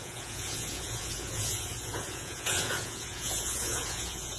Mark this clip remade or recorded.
remade